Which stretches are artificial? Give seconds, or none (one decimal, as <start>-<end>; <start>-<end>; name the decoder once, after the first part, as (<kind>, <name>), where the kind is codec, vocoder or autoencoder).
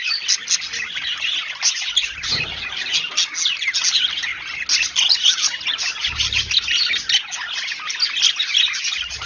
none